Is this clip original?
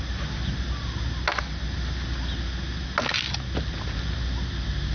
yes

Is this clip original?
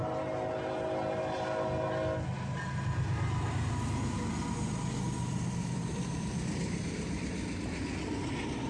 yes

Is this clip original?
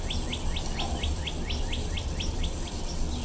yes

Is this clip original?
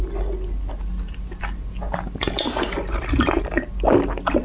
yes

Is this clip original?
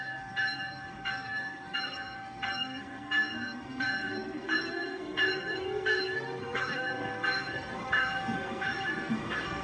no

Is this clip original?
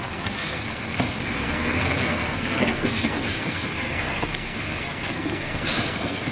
no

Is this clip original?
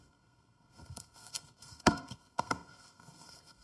no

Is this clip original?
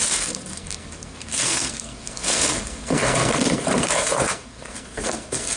no